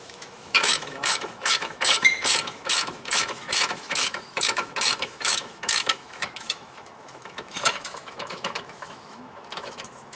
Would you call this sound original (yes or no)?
no